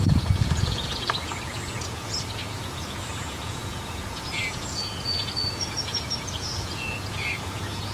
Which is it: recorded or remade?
remade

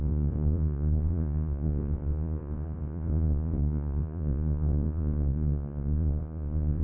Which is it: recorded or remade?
remade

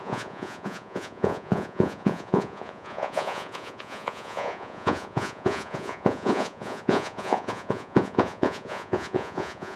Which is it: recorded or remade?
remade